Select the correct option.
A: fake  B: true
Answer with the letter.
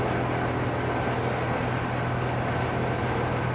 B